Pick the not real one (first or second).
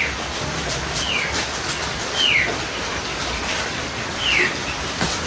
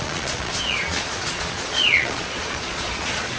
second